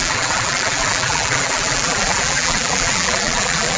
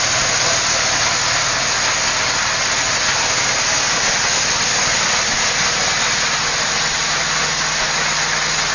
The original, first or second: second